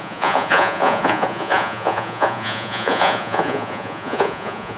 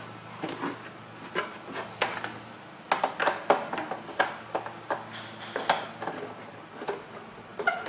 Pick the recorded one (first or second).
second